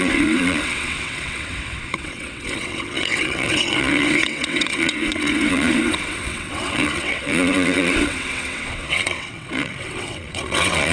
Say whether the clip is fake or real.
fake